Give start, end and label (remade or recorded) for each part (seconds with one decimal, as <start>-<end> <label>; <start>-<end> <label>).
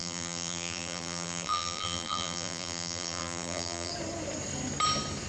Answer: 0.0-3.9 remade; 3.9-5.3 recorded